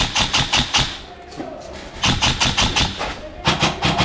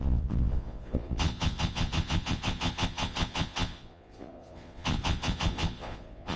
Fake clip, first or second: second